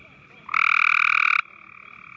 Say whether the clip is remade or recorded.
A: recorded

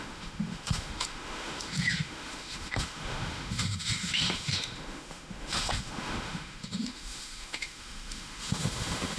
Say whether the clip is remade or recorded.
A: remade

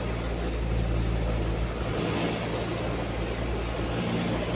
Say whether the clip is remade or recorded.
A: recorded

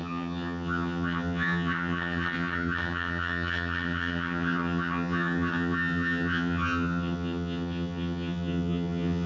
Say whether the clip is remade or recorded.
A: remade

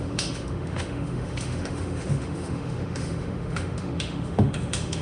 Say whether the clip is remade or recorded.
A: remade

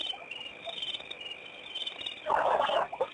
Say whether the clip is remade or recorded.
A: recorded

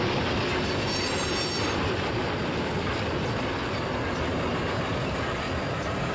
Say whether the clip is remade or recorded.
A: recorded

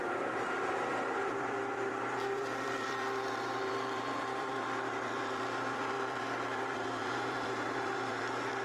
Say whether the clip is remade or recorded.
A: remade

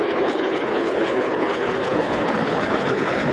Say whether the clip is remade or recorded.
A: remade